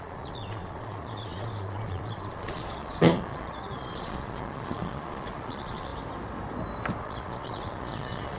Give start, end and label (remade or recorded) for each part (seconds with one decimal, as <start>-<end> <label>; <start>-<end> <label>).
0.0-5.9 remade; 5.9-7.0 recorded; 7.0-8.4 remade